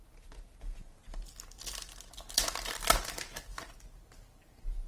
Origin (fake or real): real